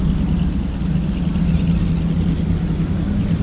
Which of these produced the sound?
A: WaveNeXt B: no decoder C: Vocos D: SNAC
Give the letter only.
B